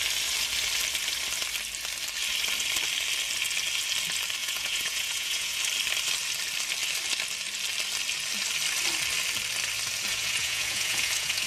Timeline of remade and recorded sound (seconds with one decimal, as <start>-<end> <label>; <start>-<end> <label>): 0.0-4.4 recorded; 4.4-5.6 remade; 5.6-10.1 recorded; 10.1-11.5 remade